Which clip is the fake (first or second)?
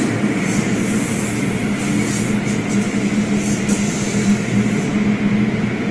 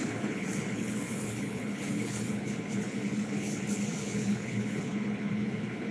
second